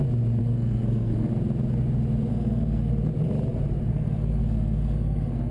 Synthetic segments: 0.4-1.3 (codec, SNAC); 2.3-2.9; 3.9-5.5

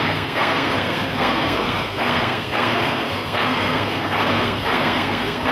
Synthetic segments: 0.0-5.5 (codec, SNAC)

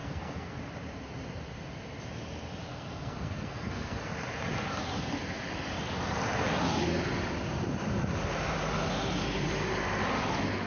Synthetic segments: 0.0-0.6 (codec, SNAC); 2.7-4.1

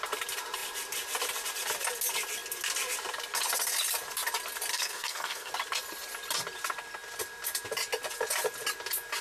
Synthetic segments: 4.7-5.5 (codec, SNAC)

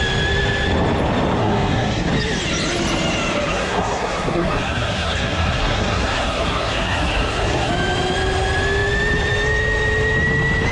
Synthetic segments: 1.4-2.1 (codec, SNAC); 3.5-7.7

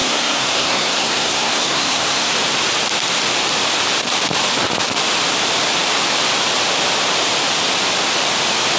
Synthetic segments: 0.0-2.3 (codec, SNAC)